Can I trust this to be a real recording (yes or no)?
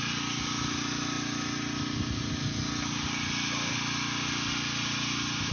yes